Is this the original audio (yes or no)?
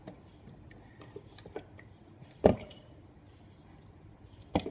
yes